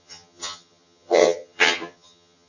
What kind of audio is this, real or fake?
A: fake